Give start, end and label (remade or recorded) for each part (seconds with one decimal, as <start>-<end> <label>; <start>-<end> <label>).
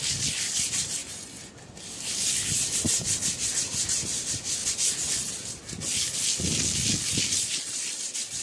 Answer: 0.0-1.0 recorded; 1.0-1.5 remade; 1.5-4.6 recorded; 4.6-5.1 remade; 5.1-8.4 recorded